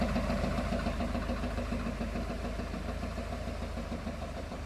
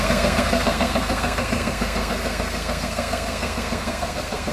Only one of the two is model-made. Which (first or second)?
second